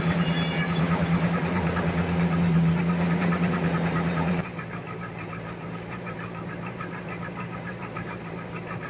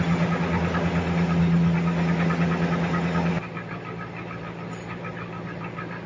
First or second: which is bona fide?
second